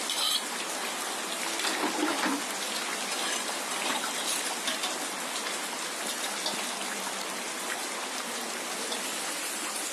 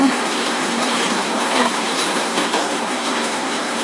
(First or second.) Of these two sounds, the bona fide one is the first